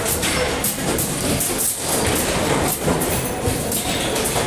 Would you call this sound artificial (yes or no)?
no